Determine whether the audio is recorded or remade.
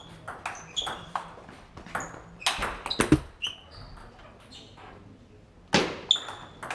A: recorded